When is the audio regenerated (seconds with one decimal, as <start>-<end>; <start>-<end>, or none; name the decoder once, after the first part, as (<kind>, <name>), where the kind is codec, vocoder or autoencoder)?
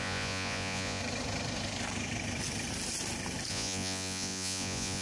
0.0-1.0 (vocoder, Vocos); 3.5-5.0